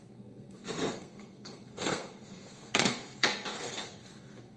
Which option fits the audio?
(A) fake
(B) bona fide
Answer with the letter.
A